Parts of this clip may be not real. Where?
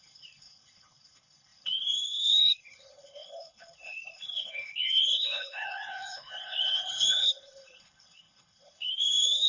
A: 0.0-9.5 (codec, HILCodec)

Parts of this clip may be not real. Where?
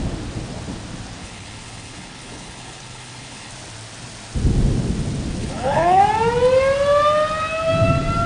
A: 1.2-3.5 (codec, HILCodec); 5.4-6.0